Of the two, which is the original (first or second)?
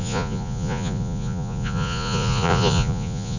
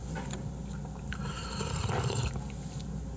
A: second